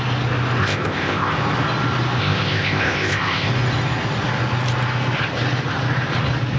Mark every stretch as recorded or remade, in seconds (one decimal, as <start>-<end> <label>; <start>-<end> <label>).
0.0-0.6 recorded; 0.6-1.3 remade; 1.3-2.2 recorded; 2.2-3.5 remade; 3.5-6.6 recorded